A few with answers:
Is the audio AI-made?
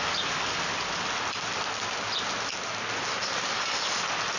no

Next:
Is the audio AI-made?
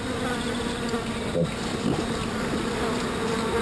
no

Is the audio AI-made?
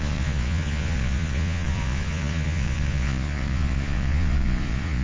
yes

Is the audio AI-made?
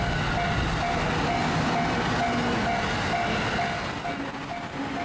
no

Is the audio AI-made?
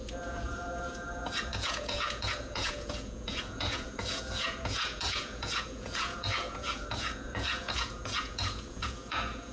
yes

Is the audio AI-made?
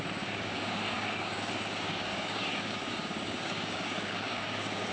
yes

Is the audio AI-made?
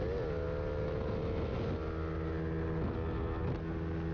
no